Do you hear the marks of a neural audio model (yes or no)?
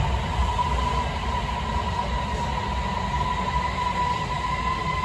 no